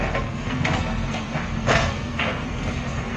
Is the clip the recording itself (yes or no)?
no